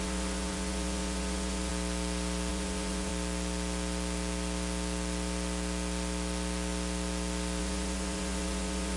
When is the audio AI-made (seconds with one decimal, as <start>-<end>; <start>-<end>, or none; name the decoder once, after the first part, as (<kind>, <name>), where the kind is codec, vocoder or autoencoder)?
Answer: 0.0-1.7 (vocoder, Vocos); 2.5-3.1; 7.6-9.0